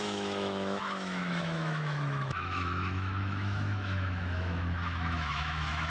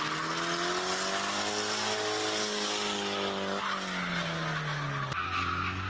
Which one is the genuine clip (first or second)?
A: second